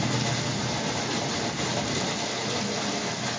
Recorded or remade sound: recorded